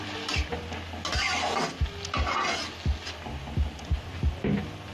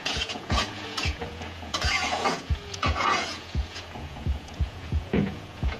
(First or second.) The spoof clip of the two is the second